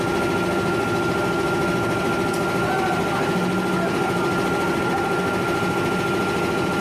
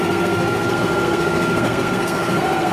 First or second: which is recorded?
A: first